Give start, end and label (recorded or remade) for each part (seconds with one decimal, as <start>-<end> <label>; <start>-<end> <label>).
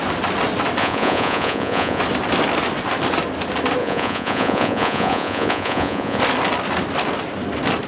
0.0-0.8 recorded; 0.8-2.0 remade; 2.0-3.8 recorded; 3.8-6.2 remade; 6.2-7.9 recorded